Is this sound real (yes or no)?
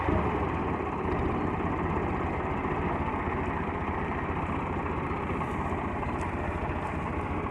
yes